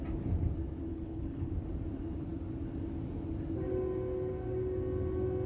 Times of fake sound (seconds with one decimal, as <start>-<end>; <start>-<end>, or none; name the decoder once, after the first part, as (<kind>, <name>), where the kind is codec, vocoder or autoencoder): 0.9-1.5 (codec, HILCodec)